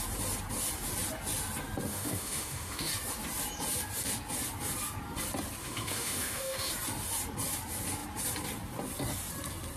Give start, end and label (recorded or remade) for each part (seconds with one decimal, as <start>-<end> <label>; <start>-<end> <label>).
0.0-1.9 recorded; 1.9-2.9 remade; 2.9-5.6 recorded; 5.6-6.7 remade; 6.7-9.8 recorded